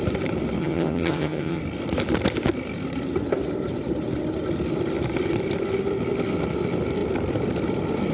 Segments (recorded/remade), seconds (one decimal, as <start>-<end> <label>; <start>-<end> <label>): 0.0-0.6 recorded; 0.6-1.6 remade; 1.6-8.1 recorded